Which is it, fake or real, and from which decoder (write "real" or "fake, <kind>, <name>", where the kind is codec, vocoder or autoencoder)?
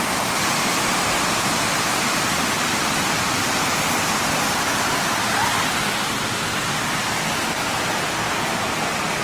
real